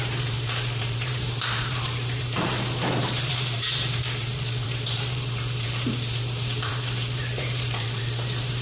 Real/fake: fake